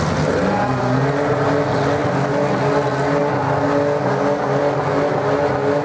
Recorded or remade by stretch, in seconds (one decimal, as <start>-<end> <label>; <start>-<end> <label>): 0.0-5.8 recorded